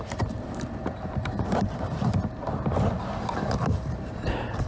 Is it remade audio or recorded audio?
remade